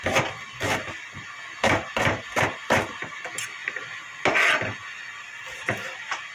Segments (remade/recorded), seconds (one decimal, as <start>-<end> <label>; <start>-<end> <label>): 0.0-6.3 recorded